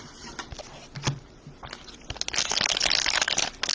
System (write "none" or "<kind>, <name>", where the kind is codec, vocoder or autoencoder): none